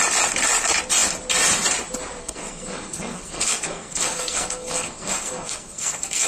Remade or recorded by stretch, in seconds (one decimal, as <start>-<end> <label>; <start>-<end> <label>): 0.0-2.2 recorded; 2.2-6.3 remade